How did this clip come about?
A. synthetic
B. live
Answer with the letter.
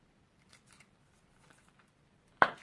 A